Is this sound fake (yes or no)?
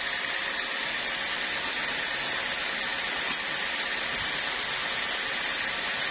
no